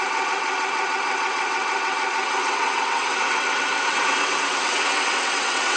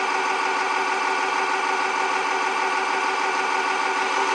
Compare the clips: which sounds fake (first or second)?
first